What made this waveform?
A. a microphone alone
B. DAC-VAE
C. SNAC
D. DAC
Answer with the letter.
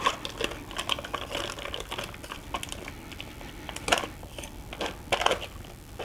A